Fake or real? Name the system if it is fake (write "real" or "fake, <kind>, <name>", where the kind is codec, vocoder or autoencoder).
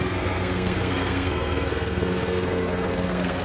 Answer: fake, codec, SNAC